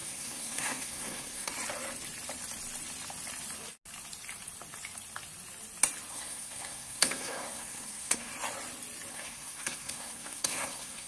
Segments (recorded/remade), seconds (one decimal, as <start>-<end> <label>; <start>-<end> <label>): 0.0-1.5 remade; 1.5-6.1 recorded; 6.1-8.3 remade; 8.3-9.1 recorded; 9.1-11.1 remade